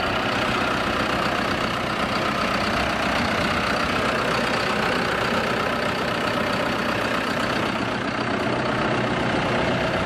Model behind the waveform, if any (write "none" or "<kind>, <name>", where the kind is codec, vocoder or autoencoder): none